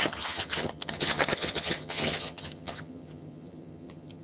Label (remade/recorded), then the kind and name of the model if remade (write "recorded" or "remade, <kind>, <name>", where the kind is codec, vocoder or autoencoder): remade, vocoder, HiFi-GAN